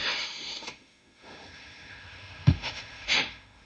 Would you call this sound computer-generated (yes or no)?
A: yes